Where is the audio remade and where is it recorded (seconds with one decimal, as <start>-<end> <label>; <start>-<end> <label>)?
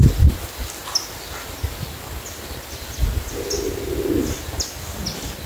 0.0-5.5 recorded